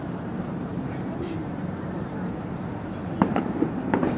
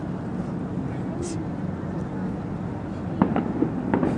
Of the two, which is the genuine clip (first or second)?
second